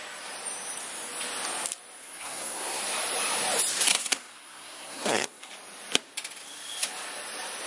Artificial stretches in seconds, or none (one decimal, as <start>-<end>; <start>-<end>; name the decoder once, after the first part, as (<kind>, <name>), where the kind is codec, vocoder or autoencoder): 2.0-2.8 (codec, SNAC); 3.9-5.5